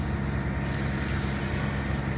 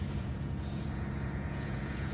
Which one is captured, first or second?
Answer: first